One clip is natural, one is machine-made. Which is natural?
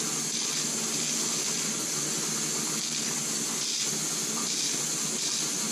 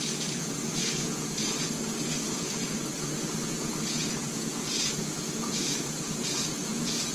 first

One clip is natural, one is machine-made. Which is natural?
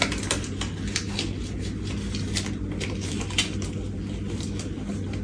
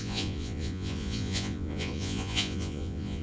first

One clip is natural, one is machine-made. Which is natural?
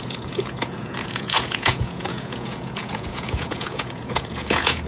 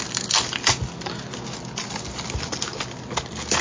second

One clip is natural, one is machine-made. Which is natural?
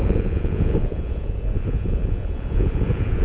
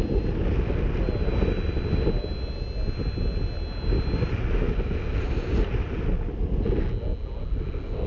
second